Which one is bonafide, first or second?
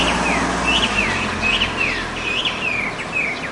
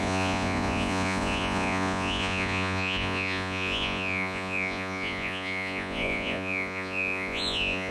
first